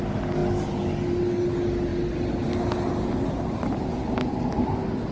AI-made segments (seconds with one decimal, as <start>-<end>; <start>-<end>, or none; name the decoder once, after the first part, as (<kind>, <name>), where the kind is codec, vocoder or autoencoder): none